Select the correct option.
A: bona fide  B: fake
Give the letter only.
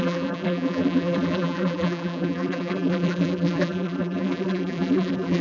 B